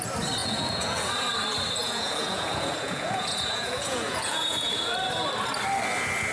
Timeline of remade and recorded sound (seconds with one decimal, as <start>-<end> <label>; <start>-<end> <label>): 0.0-0.4 recorded; 0.4-1.1 remade; 1.1-1.8 recorded; 1.8-4.9 remade; 4.9-6.3 recorded